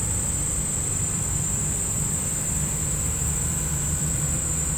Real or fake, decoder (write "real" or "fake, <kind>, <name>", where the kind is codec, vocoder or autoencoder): fake, vocoder, BigVGAN v2